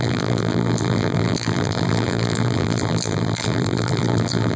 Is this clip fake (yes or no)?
yes